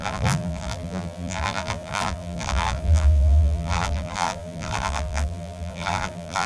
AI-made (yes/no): yes